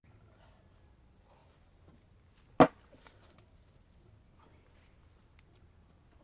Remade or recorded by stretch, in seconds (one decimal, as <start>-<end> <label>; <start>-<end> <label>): 0.0-6.2 recorded

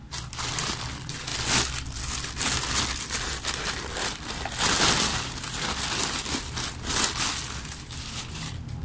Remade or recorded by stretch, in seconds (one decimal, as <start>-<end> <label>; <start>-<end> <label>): 0.0-8.8 recorded